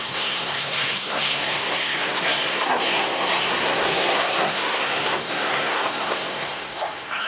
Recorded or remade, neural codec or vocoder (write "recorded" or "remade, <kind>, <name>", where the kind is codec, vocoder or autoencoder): remade, codec, SNAC